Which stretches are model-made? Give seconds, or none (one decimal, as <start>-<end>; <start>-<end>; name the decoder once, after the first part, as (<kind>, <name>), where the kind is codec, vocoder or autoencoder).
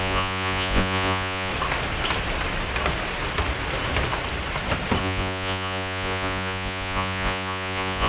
0.0-1.5 (vocoder, Vocos); 5.0-8.1